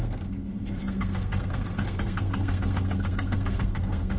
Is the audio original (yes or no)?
no